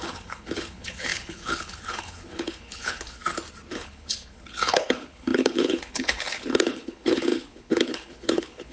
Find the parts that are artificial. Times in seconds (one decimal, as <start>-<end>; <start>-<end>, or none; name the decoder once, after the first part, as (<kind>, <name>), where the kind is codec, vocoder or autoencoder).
0.0-3.2 (codec, HILCodec); 3.7-8.7